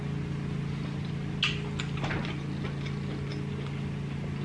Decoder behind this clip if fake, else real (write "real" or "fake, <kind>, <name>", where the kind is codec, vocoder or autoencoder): real